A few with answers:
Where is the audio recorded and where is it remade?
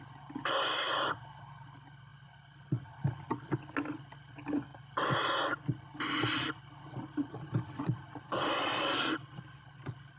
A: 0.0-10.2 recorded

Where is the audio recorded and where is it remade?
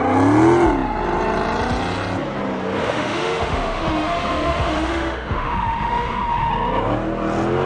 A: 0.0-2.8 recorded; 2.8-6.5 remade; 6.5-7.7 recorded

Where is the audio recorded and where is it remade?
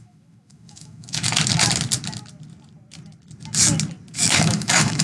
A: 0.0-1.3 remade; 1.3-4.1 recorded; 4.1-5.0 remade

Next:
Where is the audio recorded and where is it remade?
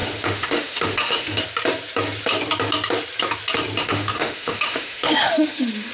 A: 0.0-1.4 remade; 1.4-3.8 recorded; 3.8-5.9 remade